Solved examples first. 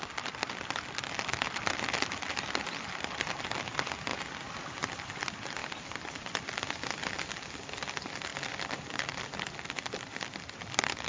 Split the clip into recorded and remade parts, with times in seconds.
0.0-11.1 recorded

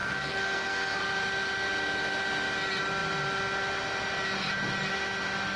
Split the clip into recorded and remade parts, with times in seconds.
0.0-1.0 remade; 1.0-5.6 recorded

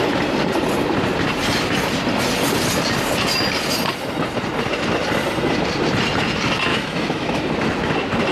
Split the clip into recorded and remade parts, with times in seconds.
0.0-6.7 recorded; 6.7-7.4 remade; 7.4-8.3 recorded

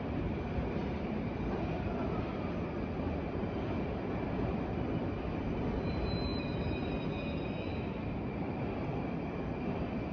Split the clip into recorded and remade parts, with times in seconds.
0.0-10.1 recorded

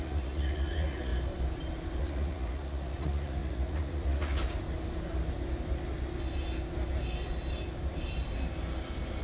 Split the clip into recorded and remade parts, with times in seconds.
0.0-1.1 remade; 1.1-2.0 recorded; 2.0-4.4 remade; 4.4-9.2 recorded

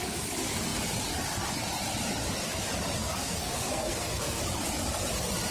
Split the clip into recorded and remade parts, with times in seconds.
0.0-3.0 recorded; 3.0-4.4 remade; 4.4-5.5 recorded